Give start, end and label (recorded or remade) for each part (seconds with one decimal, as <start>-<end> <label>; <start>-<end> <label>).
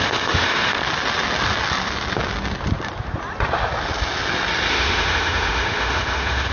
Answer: 0.0-0.8 remade; 0.8-4.7 recorded; 4.7-6.5 remade